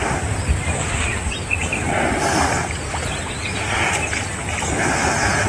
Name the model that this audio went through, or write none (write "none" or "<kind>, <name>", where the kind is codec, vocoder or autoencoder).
none